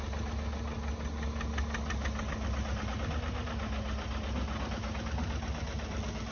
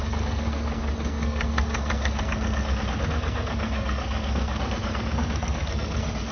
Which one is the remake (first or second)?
second